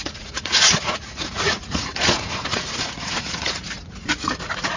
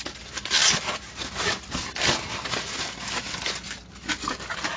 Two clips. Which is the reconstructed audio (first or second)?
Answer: first